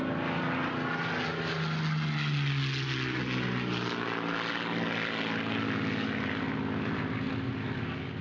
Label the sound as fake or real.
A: real